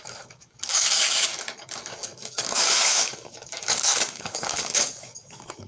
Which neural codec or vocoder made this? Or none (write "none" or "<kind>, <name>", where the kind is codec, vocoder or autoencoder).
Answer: codec, DAC